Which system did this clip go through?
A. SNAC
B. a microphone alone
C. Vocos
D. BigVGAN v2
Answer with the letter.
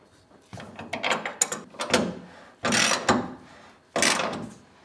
B